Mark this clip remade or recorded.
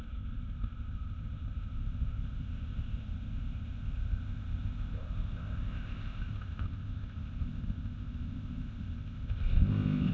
remade